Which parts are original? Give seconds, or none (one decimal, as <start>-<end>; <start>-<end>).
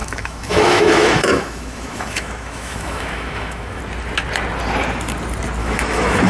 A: 3.8-5.6